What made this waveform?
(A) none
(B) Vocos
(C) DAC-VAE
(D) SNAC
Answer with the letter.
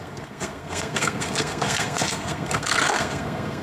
D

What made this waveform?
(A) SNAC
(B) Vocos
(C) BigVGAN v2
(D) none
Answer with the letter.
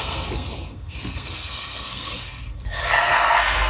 A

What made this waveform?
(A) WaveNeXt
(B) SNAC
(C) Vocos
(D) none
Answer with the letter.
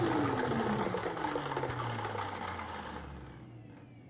D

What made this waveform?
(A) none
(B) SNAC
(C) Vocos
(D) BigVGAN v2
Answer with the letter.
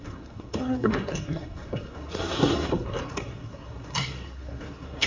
B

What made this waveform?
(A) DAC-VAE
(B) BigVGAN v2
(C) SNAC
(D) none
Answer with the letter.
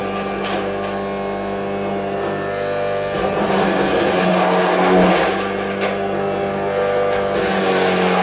D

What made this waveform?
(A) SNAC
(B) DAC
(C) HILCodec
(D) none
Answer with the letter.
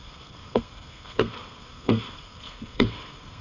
A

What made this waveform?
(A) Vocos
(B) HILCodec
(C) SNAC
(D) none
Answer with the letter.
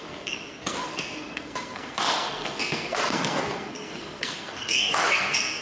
C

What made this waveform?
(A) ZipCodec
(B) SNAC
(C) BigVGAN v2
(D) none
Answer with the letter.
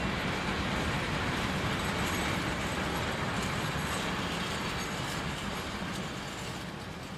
D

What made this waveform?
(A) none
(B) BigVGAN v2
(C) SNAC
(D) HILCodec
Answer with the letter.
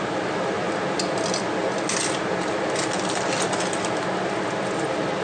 A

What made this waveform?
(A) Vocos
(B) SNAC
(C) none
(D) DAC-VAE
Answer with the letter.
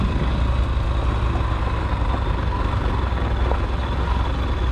C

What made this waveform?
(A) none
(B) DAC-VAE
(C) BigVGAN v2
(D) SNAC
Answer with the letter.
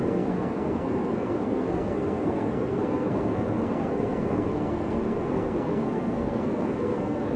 D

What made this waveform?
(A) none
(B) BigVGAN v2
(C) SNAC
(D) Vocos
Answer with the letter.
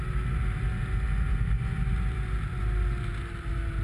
A